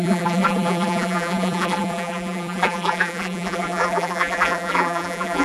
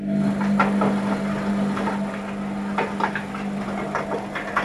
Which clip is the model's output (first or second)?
first